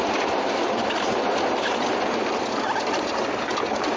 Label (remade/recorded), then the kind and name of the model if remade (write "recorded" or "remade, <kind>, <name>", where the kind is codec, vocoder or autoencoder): recorded